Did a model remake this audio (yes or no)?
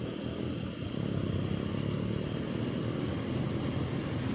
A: no